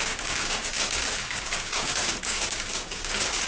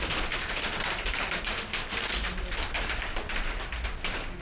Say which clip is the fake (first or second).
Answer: first